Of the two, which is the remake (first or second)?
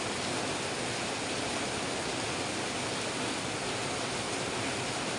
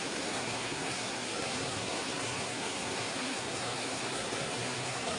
second